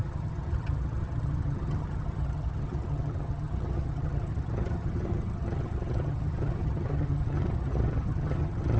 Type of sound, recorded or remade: remade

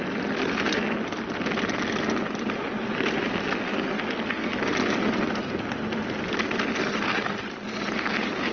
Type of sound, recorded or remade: recorded